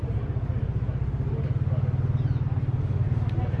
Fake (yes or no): no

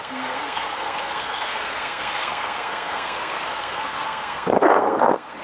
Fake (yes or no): yes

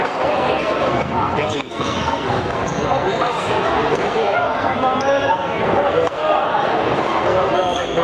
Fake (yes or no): yes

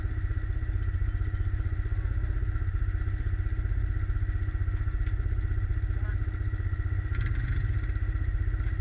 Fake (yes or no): no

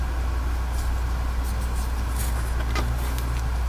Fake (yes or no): no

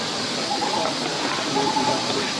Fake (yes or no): no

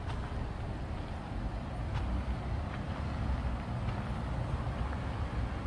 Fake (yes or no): no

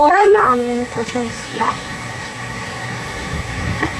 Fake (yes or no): yes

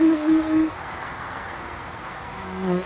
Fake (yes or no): yes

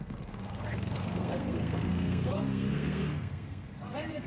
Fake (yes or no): yes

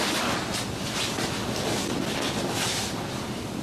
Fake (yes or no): no